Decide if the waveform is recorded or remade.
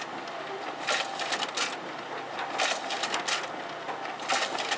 recorded